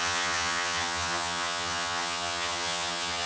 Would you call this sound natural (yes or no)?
no